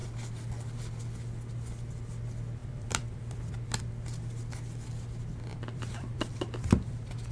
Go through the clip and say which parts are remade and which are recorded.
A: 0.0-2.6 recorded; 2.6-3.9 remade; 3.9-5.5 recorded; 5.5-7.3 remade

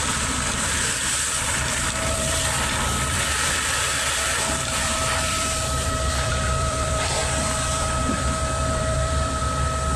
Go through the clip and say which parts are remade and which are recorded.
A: 0.0-9.4 remade; 9.4-10.0 recorded

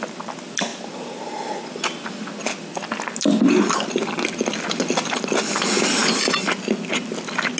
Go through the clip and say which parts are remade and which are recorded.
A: 0.0-7.6 recorded